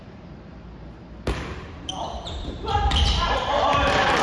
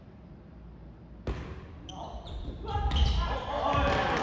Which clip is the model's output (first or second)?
first